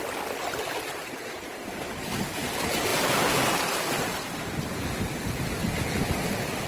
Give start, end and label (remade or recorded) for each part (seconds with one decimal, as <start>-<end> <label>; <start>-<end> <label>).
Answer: 0.0-1.0 recorded; 1.0-2.4 remade; 2.4-2.9 recorded; 2.9-5.0 remade; 5.0-6.7 recorded